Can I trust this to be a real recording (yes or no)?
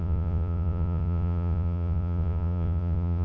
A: no